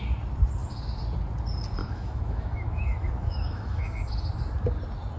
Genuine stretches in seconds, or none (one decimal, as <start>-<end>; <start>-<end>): 0.0-1.8; 4.1-5.2